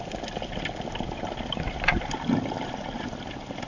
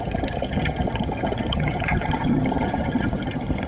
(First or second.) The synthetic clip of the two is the second